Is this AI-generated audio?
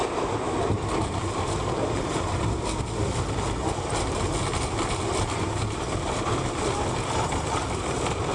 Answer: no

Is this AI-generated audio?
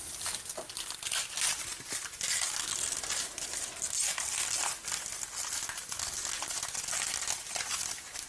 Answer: no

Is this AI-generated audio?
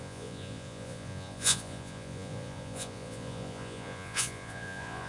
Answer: yes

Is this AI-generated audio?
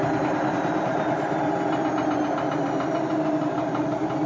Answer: no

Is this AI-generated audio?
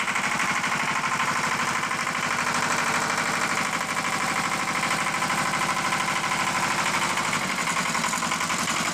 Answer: yes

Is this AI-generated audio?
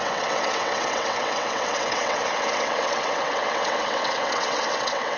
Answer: yes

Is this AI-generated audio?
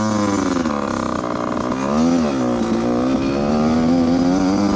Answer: no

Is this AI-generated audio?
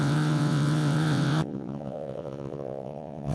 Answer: yes